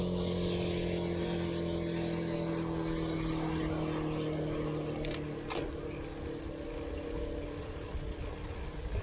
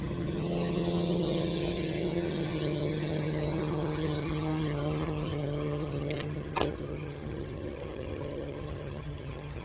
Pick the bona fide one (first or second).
first